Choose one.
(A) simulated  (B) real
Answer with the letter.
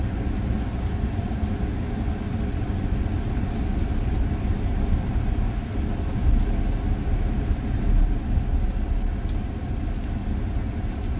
B